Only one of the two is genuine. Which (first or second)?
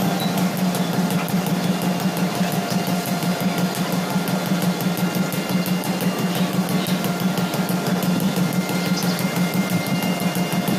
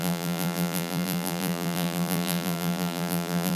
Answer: first